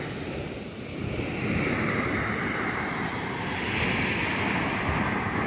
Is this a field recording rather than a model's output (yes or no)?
yes